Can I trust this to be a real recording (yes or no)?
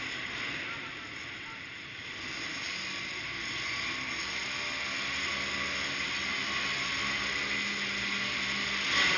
yes